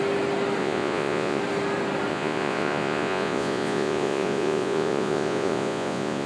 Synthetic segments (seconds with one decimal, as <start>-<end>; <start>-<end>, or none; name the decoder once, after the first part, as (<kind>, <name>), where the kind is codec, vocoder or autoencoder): 0.6-1.4 (vocoder, Vocos); 2.1-6.3